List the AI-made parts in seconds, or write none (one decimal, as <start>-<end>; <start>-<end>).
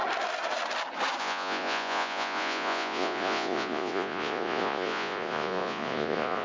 1.2-6.4